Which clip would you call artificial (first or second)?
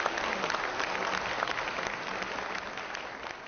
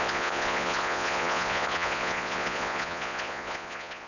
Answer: second